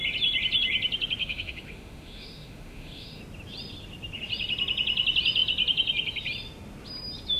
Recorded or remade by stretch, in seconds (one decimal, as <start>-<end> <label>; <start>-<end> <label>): 0.0-1.2 recorded; 1.2-3.2 remade; 3.2-7.4 recorded